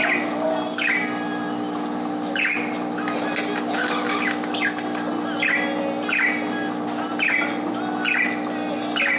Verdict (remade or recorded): recorded